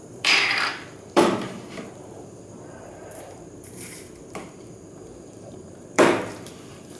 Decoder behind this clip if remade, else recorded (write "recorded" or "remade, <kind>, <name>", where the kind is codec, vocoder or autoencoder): remade, vocoder, BigVGAN v2